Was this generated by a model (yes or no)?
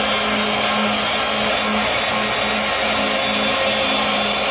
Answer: no